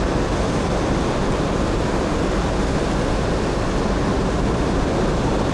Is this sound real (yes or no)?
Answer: yes